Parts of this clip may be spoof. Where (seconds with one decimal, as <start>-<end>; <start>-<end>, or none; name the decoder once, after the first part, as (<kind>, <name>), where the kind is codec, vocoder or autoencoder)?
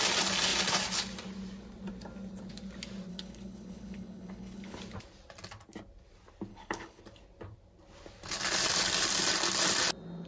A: 3.1-4.8 (codec, HILCodec); 6.5-7.0